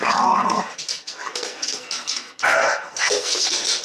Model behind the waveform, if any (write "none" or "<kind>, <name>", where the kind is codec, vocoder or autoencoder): codec, SNAC